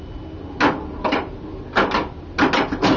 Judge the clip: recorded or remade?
recorded